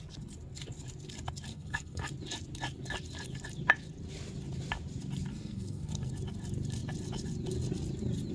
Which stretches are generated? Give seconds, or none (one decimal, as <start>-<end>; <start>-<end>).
1.5-2.1; 5.3-6.1